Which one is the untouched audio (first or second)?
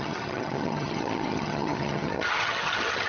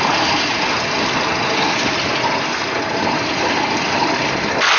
second